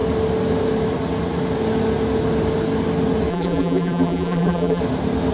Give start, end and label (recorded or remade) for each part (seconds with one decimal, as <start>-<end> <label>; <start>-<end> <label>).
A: 0.0-3.3 recorded; 3.3-4.8 remade; 4.8-5.3 recorded